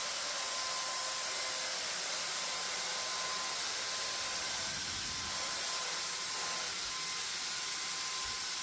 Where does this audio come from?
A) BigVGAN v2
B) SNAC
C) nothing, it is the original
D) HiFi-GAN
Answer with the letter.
C